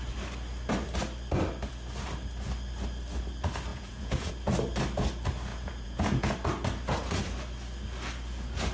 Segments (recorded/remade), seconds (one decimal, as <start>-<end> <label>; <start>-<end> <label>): 0.0-3.7 recorded; 3.7-4.3 remade; 4.3-5.5 recorded; 5.5-6.3 remade; 6.3-8.7 recorded